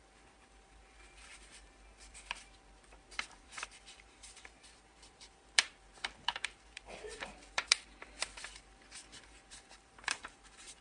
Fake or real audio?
fake